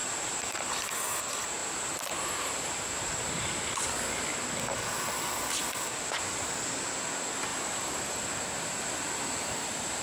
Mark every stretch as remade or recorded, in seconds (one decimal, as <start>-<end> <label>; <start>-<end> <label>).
0.0-0.8 remade; 0.8-1.6 recorded; 1.6-3.6 remade; 3.6-7.5 recorded; 7.5-10.0 remade